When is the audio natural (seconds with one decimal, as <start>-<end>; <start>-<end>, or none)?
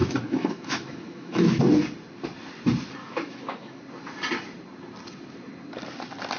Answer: 1.6-3.0; 3.8-6.4